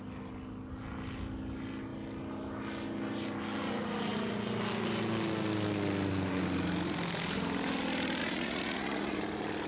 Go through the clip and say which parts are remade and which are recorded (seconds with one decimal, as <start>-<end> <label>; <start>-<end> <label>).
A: 0.0-8.2 recorded; 8.2-9.2 remade; 9.2-9.7 recorded